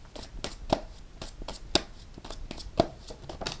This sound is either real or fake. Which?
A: real